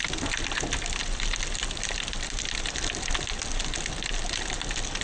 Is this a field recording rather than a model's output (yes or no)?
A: yes